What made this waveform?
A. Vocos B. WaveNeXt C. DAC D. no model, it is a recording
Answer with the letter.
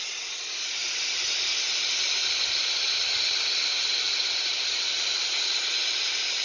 D